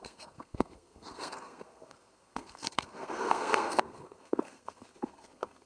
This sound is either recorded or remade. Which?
remade